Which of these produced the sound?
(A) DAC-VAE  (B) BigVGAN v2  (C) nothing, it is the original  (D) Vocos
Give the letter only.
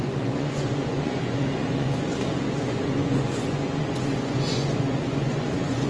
D